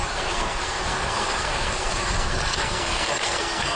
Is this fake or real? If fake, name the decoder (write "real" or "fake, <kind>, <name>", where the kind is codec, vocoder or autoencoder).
fake, codec, SNAC